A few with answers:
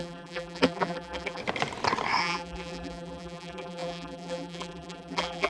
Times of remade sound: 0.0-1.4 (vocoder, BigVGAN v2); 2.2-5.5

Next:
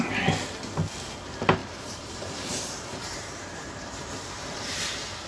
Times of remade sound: 1.6-4.8 (vocoder, BigVGAN v2)

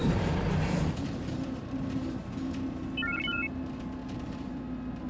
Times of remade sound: 0.0-2.2 (vocoder, BigVGAN v2); 4.0-4.5

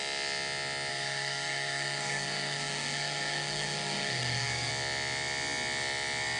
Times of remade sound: 0.9-4.7 (codec, SNAC)

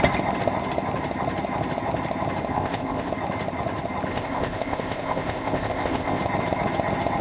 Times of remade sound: 2.5-3.1 (codec, ZipCodec); 4.1-6.2

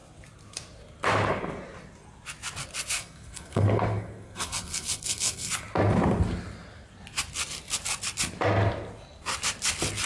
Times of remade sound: 3.0-5.5 (codec, SNAC)

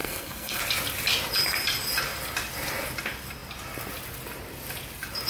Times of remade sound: 0.0-0.6 (codec, SNAC)

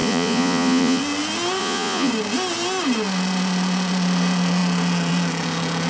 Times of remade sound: 0.0-1.0 (vocoder, Vocos); 1.6-2.1